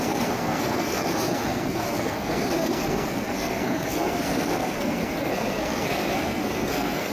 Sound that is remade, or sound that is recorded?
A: remade